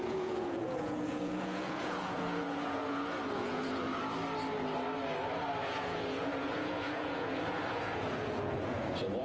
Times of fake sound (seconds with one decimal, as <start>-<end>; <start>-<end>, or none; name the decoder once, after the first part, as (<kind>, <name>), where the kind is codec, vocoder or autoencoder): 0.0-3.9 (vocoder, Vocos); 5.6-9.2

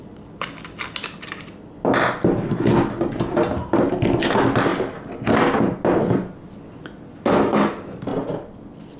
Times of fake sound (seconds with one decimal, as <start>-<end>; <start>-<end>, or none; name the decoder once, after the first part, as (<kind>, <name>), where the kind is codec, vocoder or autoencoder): none

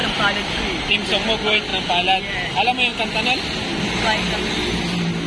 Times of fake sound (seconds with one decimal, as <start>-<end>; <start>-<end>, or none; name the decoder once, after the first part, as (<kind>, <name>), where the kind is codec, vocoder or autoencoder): none